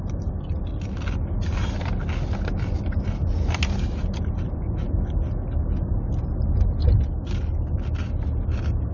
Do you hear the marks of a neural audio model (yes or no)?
no